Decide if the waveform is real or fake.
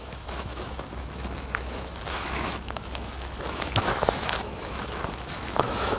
fake